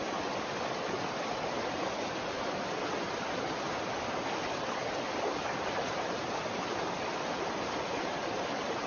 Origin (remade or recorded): recorded